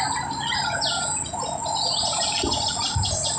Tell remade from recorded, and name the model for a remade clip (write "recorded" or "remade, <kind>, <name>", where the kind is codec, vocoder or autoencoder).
recorded